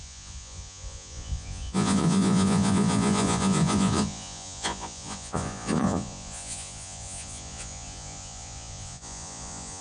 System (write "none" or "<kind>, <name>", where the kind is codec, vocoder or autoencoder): vocoder, Vocos